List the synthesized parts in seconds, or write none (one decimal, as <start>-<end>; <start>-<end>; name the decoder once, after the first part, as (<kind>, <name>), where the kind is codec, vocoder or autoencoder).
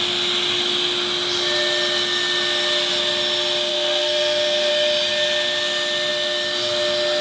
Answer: 3.7-4.7 (codec, SNAC)